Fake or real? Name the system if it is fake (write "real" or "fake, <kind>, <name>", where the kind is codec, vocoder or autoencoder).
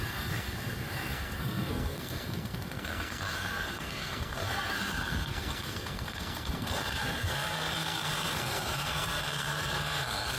fake, codec, SNAC